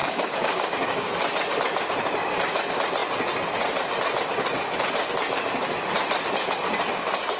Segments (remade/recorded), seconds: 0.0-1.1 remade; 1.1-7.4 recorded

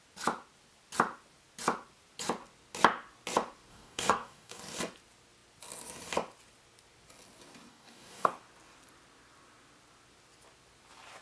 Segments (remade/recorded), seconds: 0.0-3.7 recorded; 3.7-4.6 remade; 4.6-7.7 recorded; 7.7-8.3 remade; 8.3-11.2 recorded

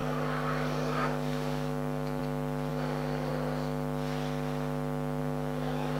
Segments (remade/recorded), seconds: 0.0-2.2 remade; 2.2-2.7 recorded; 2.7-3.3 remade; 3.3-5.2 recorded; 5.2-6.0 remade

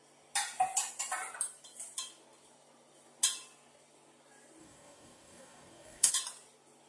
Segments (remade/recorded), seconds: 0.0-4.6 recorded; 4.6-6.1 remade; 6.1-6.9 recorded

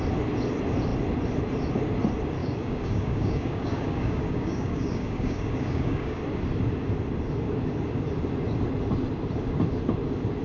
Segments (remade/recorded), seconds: 0.0-2.4 recorded; 2.4-6.2 remade; 6.2-10.4 recorded

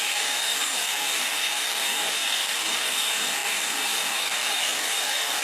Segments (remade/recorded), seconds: 0.0-5.4 remade

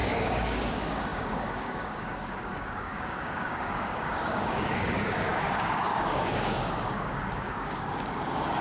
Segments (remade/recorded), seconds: 0.0-8.6 remade